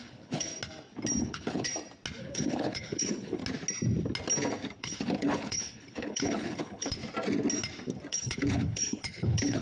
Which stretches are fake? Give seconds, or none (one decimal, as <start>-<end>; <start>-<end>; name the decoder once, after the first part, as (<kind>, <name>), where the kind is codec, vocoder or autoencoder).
0.0-0.5 (codec, HILCodec); 1.2-1.7; 2.2-3.4; 4.8-7.0; 8.1-9.6